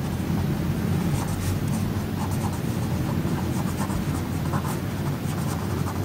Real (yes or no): yes